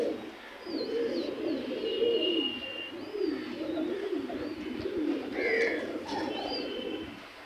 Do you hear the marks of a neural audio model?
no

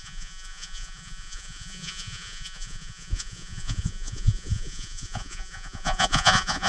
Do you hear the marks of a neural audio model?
yes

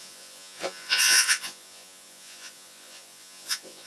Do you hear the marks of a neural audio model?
yes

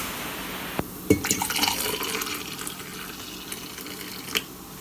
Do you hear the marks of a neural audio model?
no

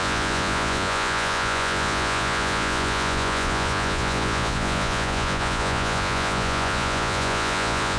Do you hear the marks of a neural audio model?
yes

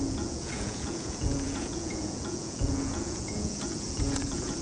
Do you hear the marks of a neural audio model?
yes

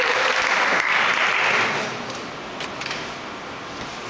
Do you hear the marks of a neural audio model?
no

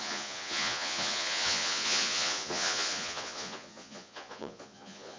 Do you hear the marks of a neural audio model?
yes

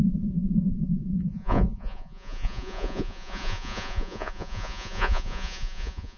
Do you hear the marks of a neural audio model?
yes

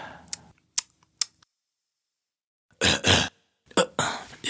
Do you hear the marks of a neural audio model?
no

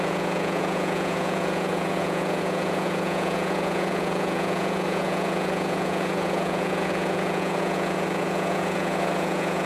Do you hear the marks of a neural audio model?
yes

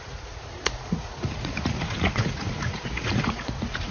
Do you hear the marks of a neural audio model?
yes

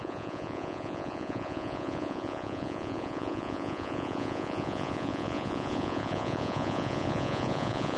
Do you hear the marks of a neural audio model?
yes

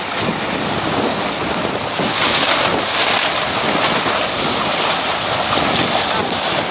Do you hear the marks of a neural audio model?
no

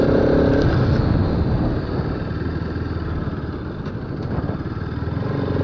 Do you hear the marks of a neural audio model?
no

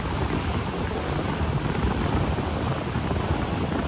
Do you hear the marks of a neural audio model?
no